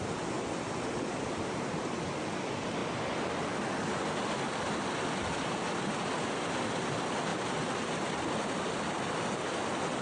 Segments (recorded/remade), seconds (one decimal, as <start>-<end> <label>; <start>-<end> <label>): 0.0-10.0 recorded